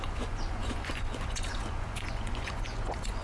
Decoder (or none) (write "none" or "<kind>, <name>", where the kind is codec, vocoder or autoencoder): vocoder, Vocos